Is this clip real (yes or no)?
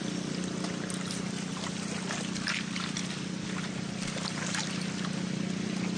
yes